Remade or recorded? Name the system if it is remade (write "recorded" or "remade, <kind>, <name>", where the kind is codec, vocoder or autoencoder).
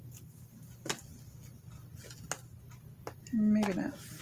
recorded